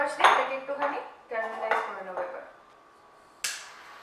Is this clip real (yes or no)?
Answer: yes